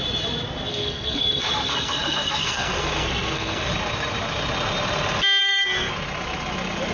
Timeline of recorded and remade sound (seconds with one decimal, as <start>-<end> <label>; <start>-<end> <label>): 0.0-0.7 recorded; 0.7-3.7 remade; 3.7-5.4 recorded; 5.4-5.9 remade; 5.9-6.9 recorded